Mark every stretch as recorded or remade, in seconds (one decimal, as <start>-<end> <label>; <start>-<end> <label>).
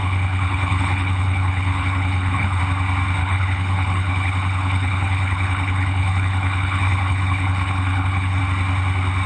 0.0-2.6 remade; 2.6-3.2 recorded; 3.2-8.4 remade; 8.4-9.3 recorded